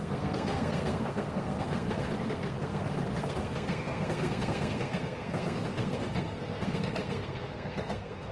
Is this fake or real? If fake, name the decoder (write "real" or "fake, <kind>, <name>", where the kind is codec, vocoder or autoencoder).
fake, codec, SNAC